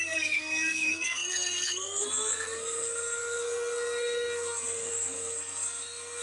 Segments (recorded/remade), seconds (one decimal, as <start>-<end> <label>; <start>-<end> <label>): 0.0-6.2 remade